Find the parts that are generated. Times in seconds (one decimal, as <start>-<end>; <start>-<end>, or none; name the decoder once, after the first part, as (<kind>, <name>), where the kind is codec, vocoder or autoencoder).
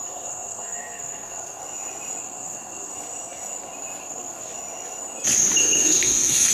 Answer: 0.0-1.6 (codec, SNAC); 2.2-2.9; 4.0-4.5; 5.6-6.5